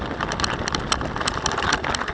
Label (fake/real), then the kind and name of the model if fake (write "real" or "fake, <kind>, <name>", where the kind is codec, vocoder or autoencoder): real